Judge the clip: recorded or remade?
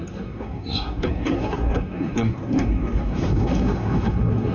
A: remade